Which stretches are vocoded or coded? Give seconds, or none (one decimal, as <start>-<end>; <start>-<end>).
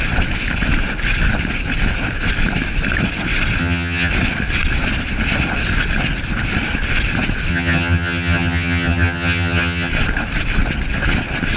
3.6-4.1; 7.5-9.9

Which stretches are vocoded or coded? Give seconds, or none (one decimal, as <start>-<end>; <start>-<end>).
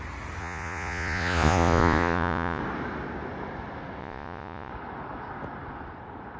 0.4-2.6; 4.0-4.7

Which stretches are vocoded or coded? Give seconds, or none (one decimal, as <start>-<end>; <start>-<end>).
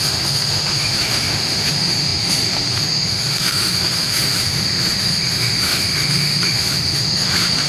0.0-7.7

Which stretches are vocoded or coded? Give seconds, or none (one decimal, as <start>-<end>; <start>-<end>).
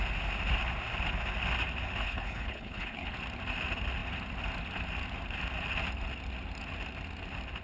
2.0-3.1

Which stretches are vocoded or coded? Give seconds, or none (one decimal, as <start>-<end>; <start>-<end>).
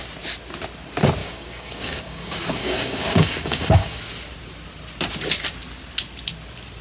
1.2-4.0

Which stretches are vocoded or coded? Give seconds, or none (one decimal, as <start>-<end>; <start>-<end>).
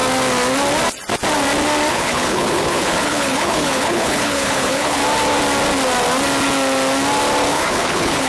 1.9-5.0; 7.5-8.3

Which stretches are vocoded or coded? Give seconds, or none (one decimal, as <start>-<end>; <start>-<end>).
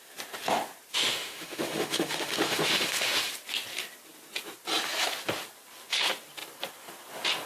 0.9-3.3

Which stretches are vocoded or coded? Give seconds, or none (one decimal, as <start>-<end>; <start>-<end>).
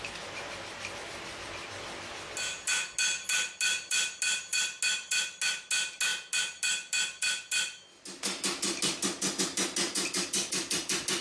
none